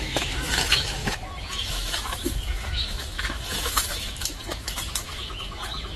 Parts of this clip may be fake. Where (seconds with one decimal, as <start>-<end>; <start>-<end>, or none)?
0.0-6.0